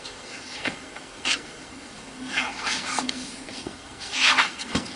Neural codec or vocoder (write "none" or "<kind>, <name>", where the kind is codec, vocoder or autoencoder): codec, SNAC